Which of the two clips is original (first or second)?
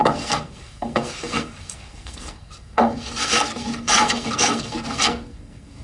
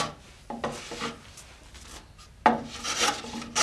second